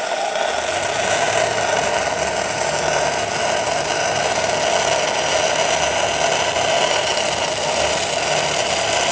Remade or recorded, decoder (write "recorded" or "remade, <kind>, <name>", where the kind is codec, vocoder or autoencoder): recorded